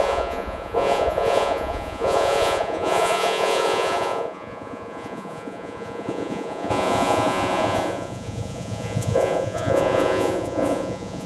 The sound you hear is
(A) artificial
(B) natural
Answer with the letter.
A